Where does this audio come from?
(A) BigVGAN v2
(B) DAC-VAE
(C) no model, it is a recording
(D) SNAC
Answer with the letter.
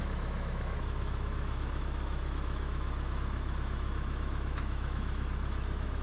B